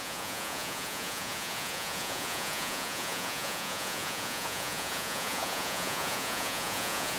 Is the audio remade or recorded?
remade